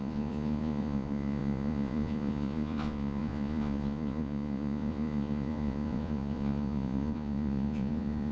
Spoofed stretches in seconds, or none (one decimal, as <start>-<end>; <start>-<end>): 0.0-8.3